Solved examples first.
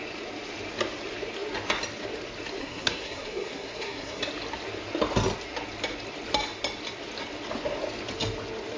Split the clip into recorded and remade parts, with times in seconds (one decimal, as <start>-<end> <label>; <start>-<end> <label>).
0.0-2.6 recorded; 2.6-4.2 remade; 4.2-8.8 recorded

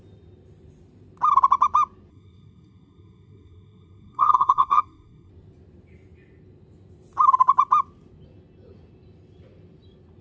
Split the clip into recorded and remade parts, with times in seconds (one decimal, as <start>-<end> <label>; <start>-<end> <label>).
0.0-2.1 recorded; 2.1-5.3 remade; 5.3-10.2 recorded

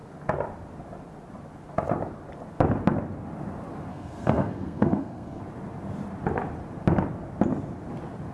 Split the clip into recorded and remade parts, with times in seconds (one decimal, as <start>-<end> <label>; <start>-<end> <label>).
0.0-3.9 recorded; 3.9-5.4 remade; 5.4-8.3 recorded